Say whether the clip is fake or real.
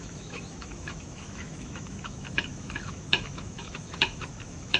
fake